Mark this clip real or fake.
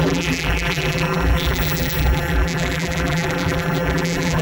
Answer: fake